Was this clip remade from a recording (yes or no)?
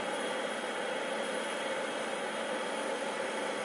no